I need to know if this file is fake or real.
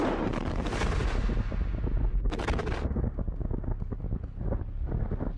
real